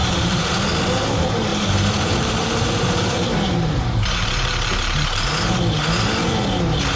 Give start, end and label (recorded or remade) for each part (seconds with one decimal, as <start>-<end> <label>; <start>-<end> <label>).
0.0-0.5 remade; 0.5-1.5 recorded; 1.5-5.3 remade; 5.3-7.0 recorded